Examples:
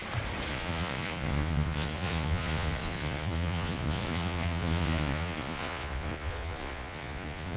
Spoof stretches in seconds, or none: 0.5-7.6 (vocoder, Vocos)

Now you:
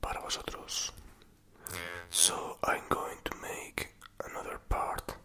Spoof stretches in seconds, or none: 1.7-2.3 (vocoder, BigVGAN v2)

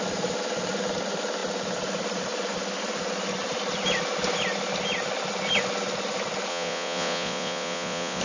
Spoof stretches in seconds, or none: 6.5-8.2 (vocoder, Vocos)